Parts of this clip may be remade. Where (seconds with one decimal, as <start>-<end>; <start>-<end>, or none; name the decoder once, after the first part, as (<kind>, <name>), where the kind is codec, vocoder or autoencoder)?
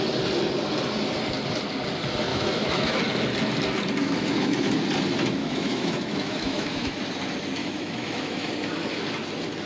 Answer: 2.3-3.0 (autoencoder, DAC-VAE); 4.0-4.7; 5.4-7.0; 7.6-8.5